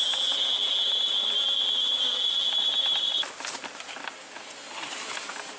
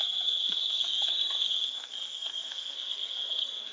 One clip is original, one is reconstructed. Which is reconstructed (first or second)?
second